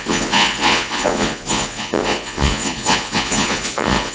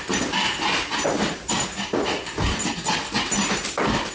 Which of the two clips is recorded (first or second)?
second